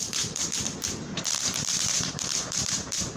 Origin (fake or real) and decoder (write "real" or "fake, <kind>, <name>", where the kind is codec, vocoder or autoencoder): fake, vocoder, BigVGAN v2